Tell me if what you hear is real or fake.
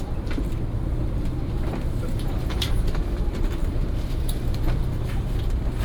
fake